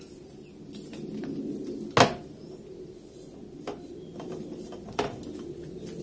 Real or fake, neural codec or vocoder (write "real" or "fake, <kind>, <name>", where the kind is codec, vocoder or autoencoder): real